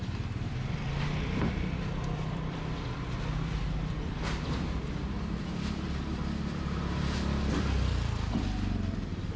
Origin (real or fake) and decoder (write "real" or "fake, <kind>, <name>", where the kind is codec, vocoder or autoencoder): fake, vocoder, BigVGAN v2